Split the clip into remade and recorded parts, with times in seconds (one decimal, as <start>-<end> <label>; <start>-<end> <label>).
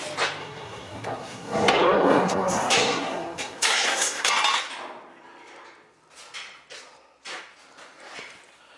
0.0-0.4 recorded; 0.4-4.3 remade; 4.3-8.8 recorded